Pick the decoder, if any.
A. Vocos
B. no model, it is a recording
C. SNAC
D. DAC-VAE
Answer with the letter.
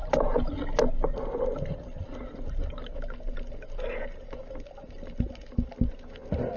B